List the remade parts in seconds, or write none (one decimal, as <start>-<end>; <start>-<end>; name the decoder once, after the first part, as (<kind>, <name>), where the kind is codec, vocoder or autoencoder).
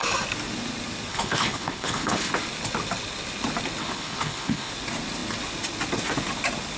1.1-2.3 (codec, HILCodec); 3.8-4.7